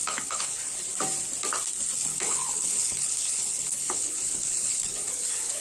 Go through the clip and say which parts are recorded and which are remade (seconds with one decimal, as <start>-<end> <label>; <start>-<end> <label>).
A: 0.0-0.9 remade; 0.9-2.1 recorded; 2.1-5.6 remade